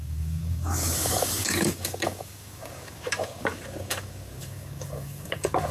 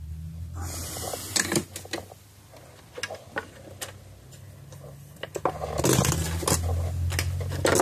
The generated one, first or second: first